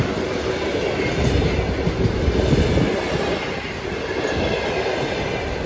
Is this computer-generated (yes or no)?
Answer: no